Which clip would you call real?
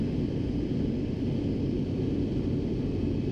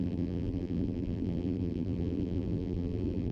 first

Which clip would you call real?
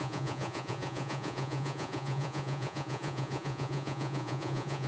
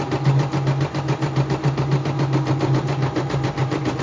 second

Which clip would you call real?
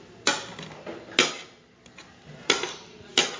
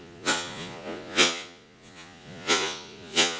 first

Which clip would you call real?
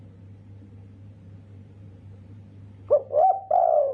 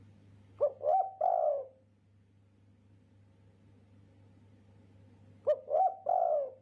second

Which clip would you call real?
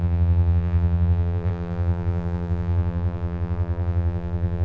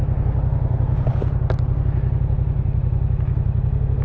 second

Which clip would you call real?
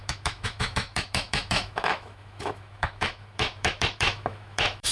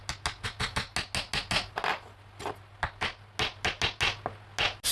second